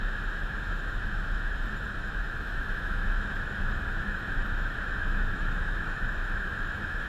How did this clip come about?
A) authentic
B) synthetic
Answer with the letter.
B